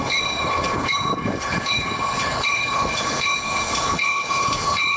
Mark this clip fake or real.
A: fake